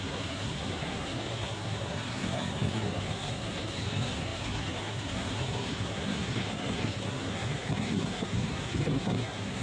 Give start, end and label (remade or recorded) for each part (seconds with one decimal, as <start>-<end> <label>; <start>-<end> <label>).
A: 0.0-9.6 remade